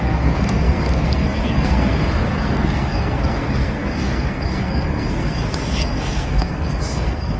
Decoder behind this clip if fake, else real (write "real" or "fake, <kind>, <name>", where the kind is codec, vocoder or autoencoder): fake, codec, SNAC